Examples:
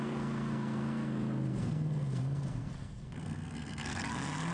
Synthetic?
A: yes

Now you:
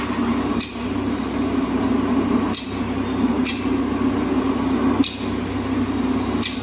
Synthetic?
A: no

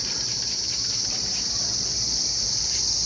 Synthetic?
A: yes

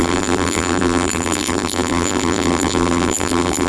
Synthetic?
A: yes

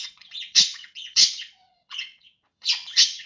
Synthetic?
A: yes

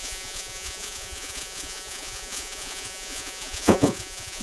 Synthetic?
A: yes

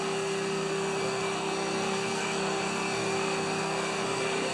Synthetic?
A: yes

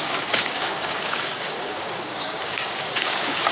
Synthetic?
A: yes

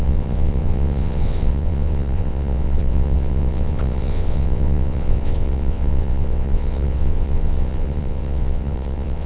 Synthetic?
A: yes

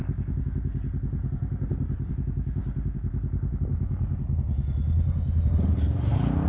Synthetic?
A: no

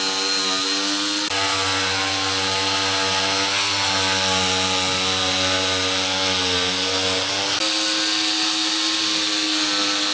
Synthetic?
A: no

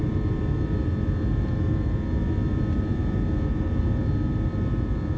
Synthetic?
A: no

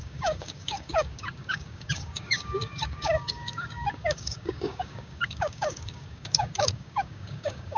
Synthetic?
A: yes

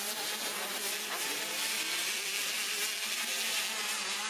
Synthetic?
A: no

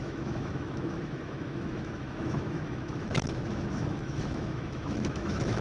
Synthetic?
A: yes